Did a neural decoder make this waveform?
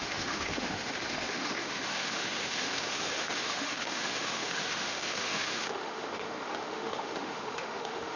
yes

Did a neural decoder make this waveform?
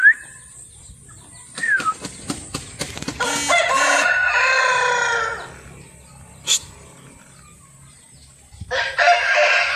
no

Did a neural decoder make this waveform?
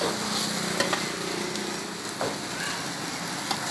no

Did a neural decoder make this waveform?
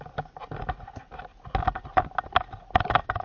no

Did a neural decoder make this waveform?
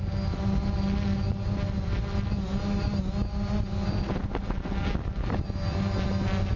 no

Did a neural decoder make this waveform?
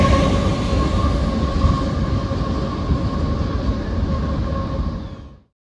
no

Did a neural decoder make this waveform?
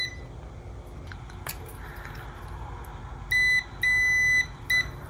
no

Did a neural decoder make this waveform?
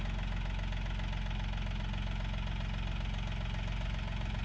no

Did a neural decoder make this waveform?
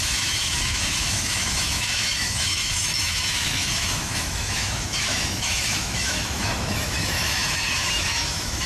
yes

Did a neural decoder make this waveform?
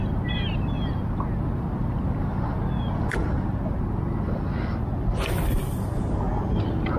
no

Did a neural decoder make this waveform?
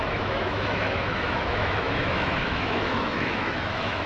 yes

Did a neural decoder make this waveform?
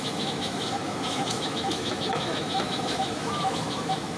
yes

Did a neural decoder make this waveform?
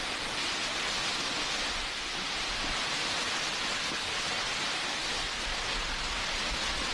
no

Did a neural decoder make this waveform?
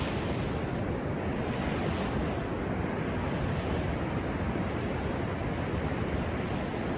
no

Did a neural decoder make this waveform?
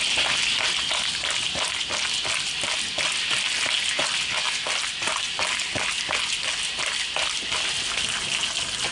no